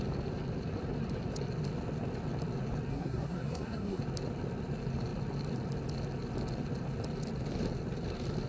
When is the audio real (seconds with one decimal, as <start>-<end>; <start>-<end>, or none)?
0.0-2.9; 4.0-8.5